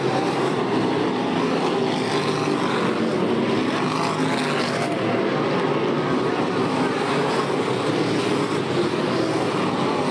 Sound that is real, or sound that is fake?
real